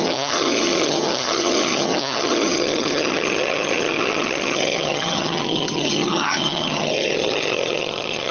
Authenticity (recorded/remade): remade